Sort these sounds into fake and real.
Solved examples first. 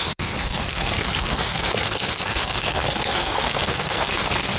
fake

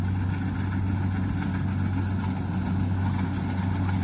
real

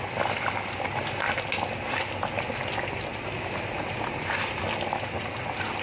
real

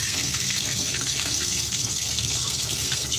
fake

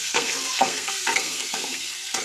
fake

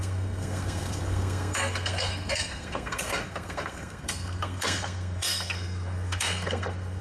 fake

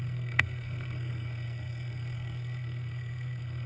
fake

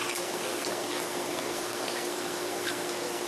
fake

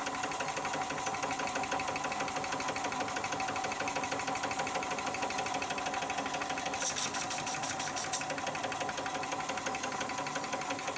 real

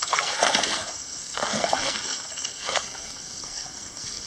fake